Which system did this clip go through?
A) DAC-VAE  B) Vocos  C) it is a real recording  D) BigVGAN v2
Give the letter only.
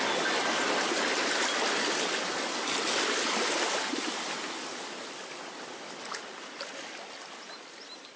C